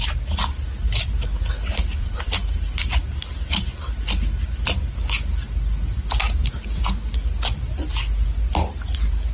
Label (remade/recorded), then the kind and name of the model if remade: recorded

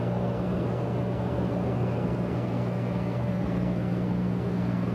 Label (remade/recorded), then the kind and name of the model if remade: remade, codec, SNAC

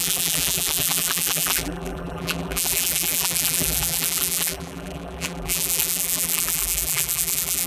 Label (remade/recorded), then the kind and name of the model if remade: remade, vocoder, BigVGAN v2